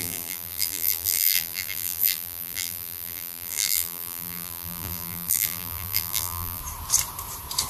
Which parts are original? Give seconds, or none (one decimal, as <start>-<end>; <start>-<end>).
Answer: 6.6-7.7